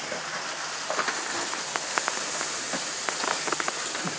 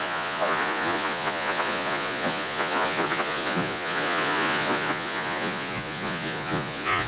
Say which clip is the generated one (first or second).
second